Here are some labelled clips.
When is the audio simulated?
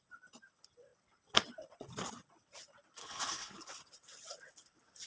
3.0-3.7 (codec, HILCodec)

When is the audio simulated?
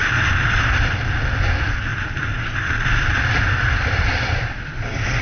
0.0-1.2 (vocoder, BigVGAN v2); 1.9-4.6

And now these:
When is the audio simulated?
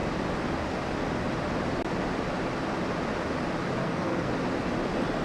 3.8-4.3 (codec, SNAC)